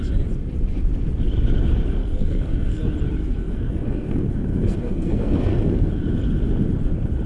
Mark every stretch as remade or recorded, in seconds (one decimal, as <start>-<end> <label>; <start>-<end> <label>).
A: 0.0-2.0 recorded; 2.0-2.8 remade; 2.8-3.2 recorded; 3.2-5.9 remade; 5.9-7.3 recorded

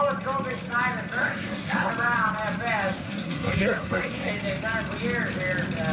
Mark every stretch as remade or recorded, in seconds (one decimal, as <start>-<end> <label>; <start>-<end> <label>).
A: 0.0-1.2 recorded; 1.2-1.9 remade; 1.9-3.0 recorded; 3.0-4.3 remade; 4.3-5.9 recorded

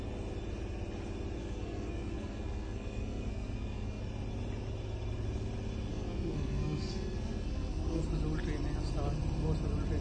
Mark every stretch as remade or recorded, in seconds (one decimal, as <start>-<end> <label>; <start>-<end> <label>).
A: 0.0-1.4 recorded; 1.4-4.0 remade; 4.0-5.9 recorded; 5.9-8.0 remade; 8.0-10.0 recorded

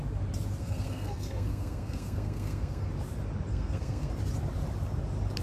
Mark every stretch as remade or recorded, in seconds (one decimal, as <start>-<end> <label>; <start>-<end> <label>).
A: 0.0-0.6 recorded; 0.6-2.9 remade; 2.9-3.5 recorded; 3.5-4.1 remade; 4.1-5.4 recorded

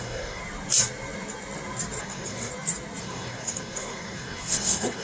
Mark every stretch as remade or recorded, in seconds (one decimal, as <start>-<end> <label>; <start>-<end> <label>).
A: 0.0-0.4 remade; 0.4-2.0 recorded; 2.0-2.5 remade; 2.5-3.0 recorded; 3.0-5.0 remade

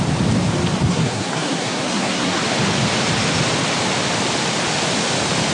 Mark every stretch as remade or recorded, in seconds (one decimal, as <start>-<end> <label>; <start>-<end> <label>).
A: 0.0-0.9 recorded; 0.9-2.4 remade; 2.4-5.5 recorded

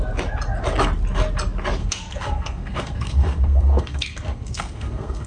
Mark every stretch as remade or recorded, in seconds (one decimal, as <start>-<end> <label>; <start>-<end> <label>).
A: 0.0-1.8 recorded; 1.8-5.3 remade

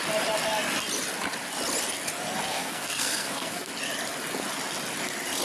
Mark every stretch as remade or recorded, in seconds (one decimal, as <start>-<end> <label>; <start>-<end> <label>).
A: 0.0-2.5 recorded; 2.5-3.7 remade; 3.7-5.4 recorded